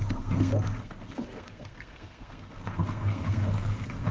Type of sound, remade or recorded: remade